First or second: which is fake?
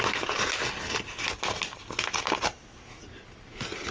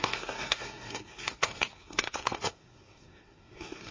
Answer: second